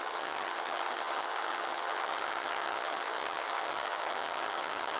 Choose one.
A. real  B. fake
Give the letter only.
B